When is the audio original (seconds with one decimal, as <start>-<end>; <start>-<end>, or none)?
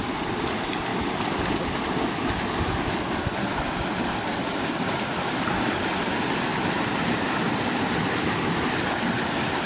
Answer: 0.0-0.9; 3.0-3.5; 4.4-6.5; 7.5-9.7